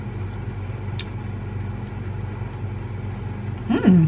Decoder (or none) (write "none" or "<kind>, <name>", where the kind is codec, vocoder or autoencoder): none